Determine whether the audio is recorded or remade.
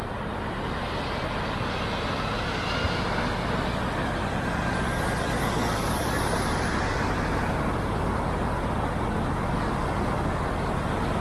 recorded